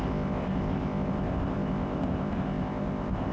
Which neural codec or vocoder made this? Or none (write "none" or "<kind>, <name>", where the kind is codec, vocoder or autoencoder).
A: codec, ZipCodec